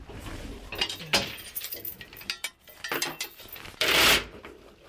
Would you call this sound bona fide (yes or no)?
yes